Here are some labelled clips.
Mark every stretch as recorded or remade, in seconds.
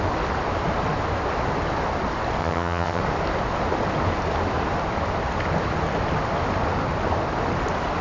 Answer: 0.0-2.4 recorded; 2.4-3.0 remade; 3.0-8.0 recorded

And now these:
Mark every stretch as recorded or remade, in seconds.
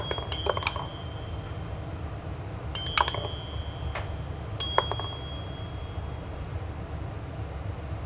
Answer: 0.0-8.1 recorded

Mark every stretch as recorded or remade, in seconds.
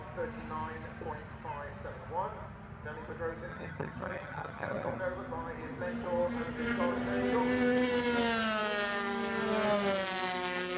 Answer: 0.0-3.5 recorded; 3.5-5.0 remade; 5.0-10.8 recorded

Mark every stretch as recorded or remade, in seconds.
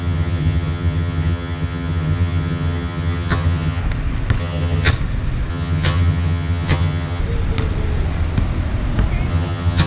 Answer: 0.0-3.8 remade; 3.8-4.4 recorded; 4.4-4.9 remade; 4.9-5.5 recorded; 5.5-7.2 remade; 7.2-9.3 recorded; 9.3-9.9 remade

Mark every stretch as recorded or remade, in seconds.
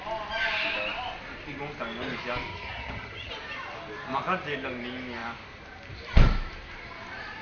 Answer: 0.0-2.5 recorded; 2.5-3.3 remade; 3.3-7.4 recorded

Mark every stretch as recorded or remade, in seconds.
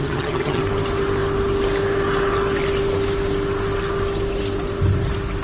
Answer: 0.0-0.6 remade; 0.6-5.4 recorded